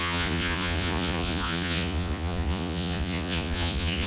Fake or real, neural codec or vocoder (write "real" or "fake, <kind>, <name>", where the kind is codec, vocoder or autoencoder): fake, vocoder, Vocos